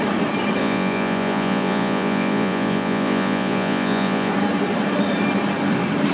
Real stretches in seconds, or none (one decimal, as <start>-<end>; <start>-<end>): 0.0-0.6; 4.3-6.1